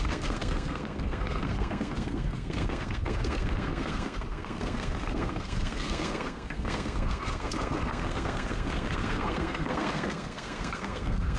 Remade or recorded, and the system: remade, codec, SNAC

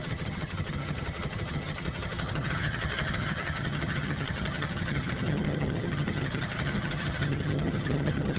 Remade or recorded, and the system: remade, vocoder, HiFi-GAN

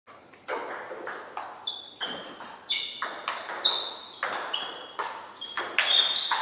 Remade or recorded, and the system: recorded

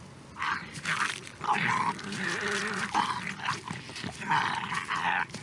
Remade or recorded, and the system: recorded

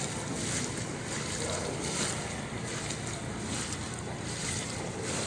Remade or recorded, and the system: recorded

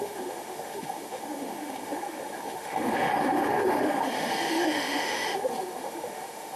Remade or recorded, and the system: remade, autoencoder, DAC-VAE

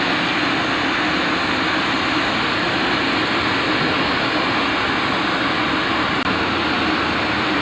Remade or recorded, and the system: recorded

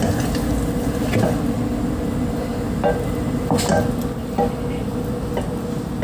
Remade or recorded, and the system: recorded